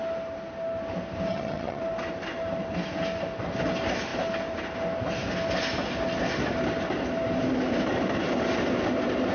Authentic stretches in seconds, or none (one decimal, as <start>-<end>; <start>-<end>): 0.0-1.3; 1.8-9.3